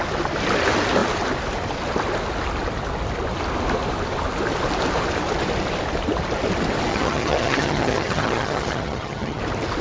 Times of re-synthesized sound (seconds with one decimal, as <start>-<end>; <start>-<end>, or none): 6.9-9.4